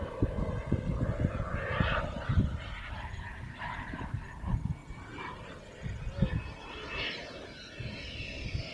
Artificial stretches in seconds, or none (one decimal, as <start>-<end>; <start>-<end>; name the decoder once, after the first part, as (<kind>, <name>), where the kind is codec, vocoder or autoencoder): none